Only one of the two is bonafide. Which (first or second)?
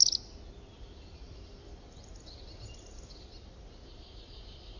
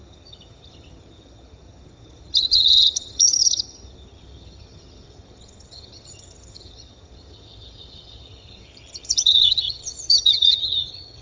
first